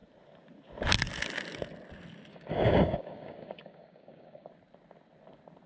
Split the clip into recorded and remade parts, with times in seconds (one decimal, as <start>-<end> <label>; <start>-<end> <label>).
0.0-2.3 recorded; 2.3-4.5 remade; 4.5-5.7 recorded